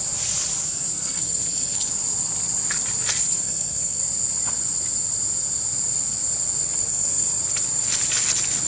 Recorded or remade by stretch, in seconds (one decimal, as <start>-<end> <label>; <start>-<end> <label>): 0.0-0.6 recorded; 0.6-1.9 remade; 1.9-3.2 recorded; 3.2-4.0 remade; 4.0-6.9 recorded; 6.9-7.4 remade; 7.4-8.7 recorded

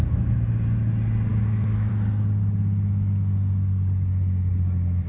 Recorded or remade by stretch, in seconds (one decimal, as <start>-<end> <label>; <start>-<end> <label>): 0.0-1.3 recorded; 1.3-1.9 remade; 1.9-5.1 recorded

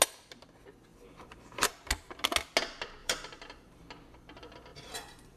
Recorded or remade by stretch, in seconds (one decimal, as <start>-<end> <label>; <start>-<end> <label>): 0.0-0.9 recorded; 0.9-1.7 remade; 1.7-3.0 recorded; 3.0-3.8 remade; 3.8-4.7 recorded; 4.7-5.4 remade